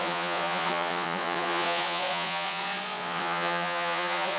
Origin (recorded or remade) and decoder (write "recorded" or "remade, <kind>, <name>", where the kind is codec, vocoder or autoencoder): remade, vocoder, Vocos